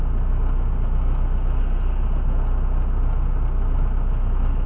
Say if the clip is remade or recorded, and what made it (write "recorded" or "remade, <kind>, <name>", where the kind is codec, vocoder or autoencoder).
recorded